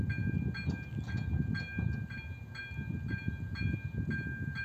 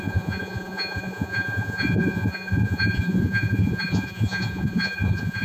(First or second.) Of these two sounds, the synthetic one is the second